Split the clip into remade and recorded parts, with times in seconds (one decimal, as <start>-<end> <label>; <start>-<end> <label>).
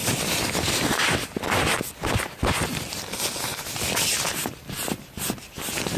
0.0-6.0 recorded